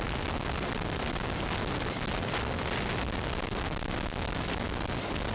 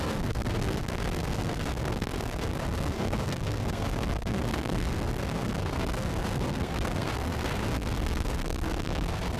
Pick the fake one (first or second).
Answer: second